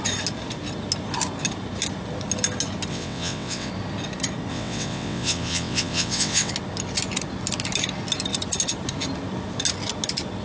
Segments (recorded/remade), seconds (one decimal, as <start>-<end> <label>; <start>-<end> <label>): 0.0-2.9 recorded; 2.9-3.7 remade; 3.7-4.5 recorded; 4.5-6.5 remade; 6.5-10.4 recorded